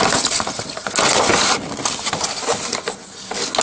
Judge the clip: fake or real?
real